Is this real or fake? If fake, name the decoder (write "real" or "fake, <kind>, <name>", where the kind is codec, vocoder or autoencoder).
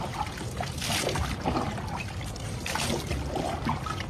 real